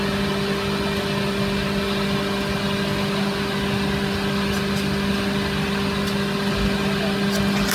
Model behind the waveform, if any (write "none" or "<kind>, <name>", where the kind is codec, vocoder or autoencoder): none